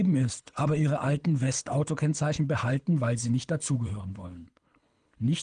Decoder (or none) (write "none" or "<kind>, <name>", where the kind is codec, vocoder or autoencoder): codec, HILCodec